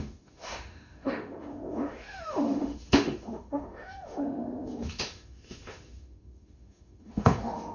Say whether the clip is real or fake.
fake